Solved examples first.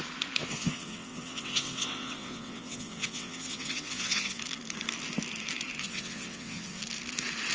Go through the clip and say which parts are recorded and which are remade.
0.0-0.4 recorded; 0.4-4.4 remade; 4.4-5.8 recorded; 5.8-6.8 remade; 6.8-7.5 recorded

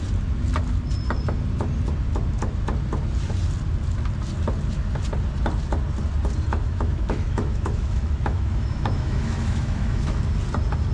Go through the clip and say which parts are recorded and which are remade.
0.0-6.5 recorded; 6.5-10.2 remade; 10.2-10.9 recorded

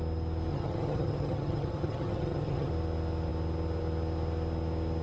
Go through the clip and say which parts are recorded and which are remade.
0.0-0.5 recorded; 0.5-2.7 remade; 2.7-5.0 recorded

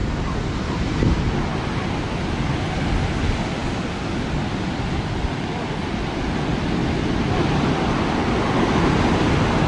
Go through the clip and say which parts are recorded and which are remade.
0.0-9.7 recorded